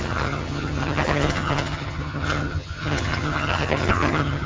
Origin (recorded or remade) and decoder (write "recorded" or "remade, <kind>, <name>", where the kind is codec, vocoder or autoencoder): remade, vocoder, HiFi-GAN